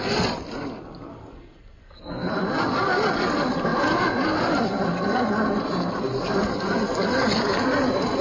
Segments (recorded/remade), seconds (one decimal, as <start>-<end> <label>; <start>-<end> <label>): 0.0-1.1 recorded; 1.1-2.3 remade; 2.3-8.2 recorded